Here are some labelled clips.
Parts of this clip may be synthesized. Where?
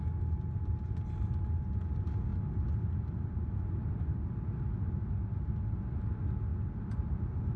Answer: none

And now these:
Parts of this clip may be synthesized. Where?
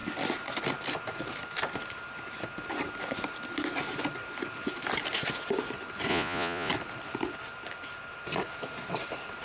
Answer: 6.1-6.7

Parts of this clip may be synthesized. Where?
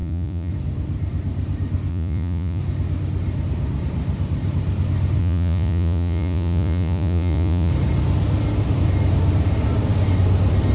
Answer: 0.0-0.5; 1.9-2.6; 5.2-7.7